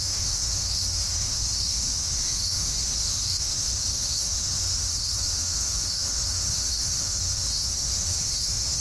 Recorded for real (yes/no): no